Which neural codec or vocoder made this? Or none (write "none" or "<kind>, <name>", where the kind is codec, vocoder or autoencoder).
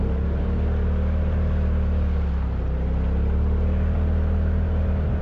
none